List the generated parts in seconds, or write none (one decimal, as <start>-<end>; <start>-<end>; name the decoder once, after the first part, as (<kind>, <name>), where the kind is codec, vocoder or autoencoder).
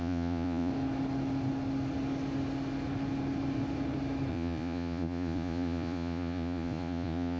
0.0-0.7 (vocoder, Vocos); 4.3-7.4